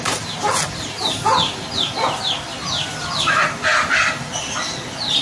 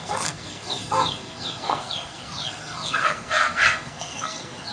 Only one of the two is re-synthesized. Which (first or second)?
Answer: second